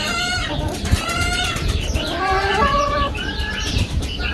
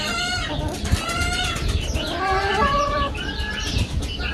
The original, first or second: second